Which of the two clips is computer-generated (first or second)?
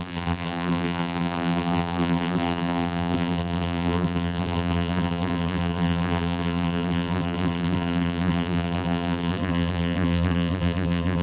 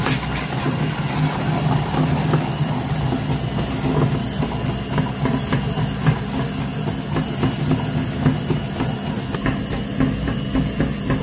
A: first